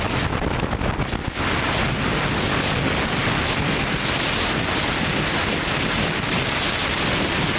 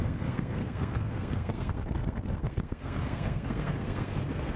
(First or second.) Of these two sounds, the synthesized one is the second